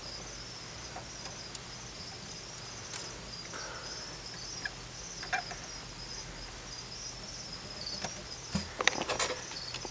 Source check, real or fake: real